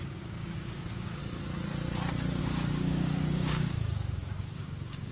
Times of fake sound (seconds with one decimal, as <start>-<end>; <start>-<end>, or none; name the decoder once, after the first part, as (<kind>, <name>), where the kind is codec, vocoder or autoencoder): 0.0-1.2 (codec, DAC); 2.4-5.1